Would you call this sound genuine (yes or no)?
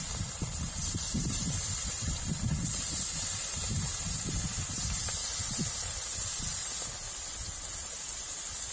yes